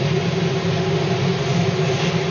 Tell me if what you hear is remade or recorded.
recorded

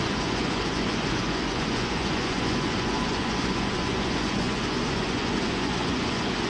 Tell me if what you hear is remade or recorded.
remade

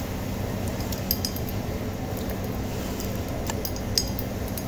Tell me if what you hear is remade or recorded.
recorded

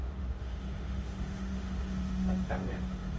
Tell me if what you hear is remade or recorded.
remade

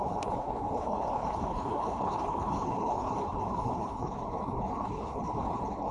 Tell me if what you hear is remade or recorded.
remade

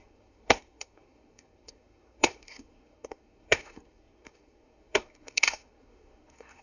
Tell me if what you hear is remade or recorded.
remade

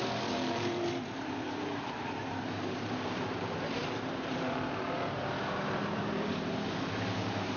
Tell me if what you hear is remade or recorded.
remade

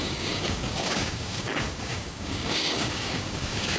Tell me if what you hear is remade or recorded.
remade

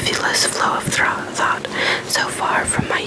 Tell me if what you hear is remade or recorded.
recorded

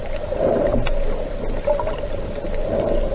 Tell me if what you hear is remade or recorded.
recorded